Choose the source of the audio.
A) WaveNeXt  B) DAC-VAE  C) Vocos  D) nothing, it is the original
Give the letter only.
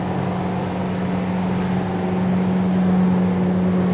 D